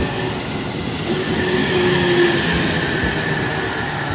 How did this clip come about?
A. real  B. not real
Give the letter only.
A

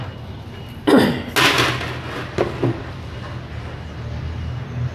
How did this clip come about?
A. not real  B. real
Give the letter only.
B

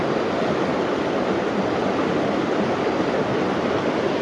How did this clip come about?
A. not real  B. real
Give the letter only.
B